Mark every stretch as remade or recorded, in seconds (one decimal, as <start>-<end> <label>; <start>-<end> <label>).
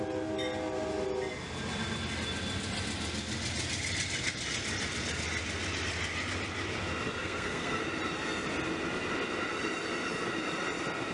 0.0-7.2 recorded; 7.2-7.8 remade; 7.8-11.1 recorded